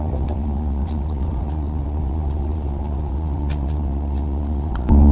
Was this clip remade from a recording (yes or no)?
yes